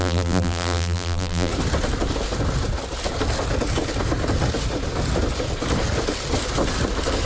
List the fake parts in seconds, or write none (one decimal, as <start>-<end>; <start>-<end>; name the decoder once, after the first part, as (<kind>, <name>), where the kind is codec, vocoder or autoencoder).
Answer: 0.0-1.5 (vocoder, BigVGAN v2)